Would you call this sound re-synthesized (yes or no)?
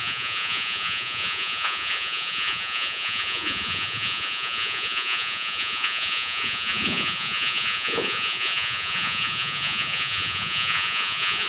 yes